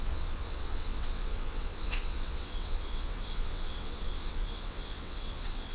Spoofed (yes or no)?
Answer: yes